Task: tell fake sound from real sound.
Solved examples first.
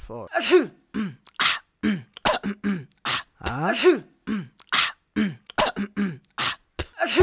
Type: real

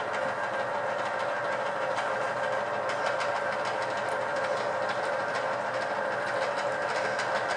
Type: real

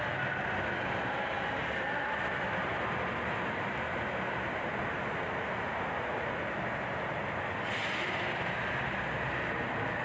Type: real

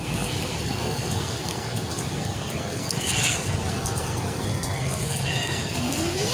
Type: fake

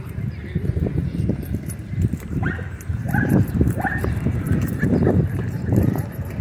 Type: fake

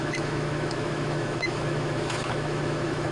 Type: fake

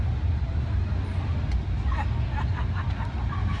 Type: real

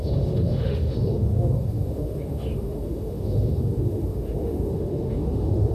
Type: fake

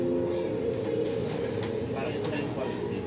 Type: real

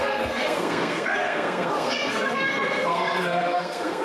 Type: fake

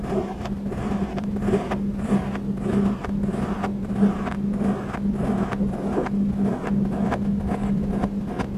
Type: real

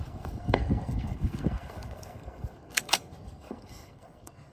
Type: fake